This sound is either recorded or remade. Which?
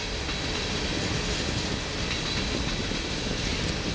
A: recorded